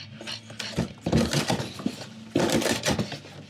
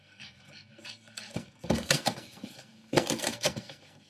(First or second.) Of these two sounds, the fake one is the second